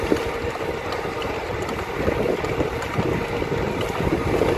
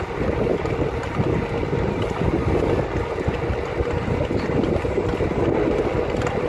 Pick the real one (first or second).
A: second